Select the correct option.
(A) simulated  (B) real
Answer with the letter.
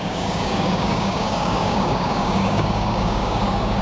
A